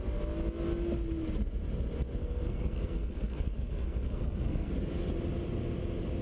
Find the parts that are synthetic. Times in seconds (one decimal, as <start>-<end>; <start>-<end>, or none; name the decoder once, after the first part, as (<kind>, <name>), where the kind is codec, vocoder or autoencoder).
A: 2.2-4.7 (codec, SNAC)